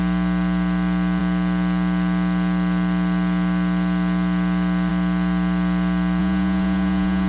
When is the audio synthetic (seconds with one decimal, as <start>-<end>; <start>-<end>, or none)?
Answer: 6.2-7.3

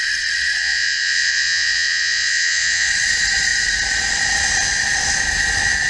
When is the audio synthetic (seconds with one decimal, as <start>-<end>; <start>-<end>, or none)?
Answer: 0.6-2.9

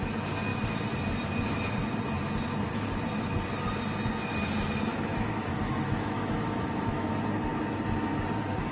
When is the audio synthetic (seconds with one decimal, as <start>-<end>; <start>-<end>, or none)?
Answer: 4.9-7.1

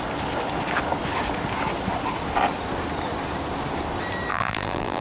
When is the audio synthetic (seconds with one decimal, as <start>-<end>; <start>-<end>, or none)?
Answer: 4.3-5.0